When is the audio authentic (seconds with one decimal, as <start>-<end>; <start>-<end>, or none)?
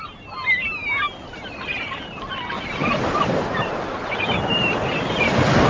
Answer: 0.0-5.7